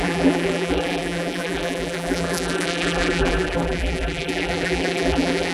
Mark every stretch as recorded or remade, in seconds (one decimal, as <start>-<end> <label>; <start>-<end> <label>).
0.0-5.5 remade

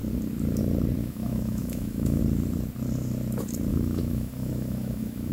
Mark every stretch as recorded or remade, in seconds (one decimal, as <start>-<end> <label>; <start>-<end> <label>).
0.0-1.0 recorded; 1.0-2.2 remade; 2.2-3.7 recorded; 3.7-5.3 remade

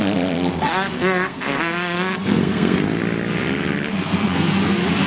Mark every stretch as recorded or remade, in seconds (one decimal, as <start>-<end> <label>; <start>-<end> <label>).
0.0-0.5 recorded; 0.5-3.0 remade; 3.0-3.9 recorded; 3.9-4.5 remade; 4.5-5.1 recorded

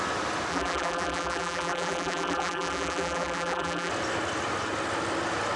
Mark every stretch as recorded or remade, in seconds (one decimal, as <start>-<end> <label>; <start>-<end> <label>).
0.0-0.5 recorded; 0.5-3.9 remade; 3.9-5.6 recorded